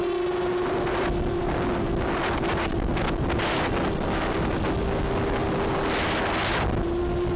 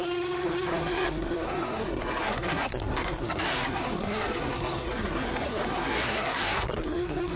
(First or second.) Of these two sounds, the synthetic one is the second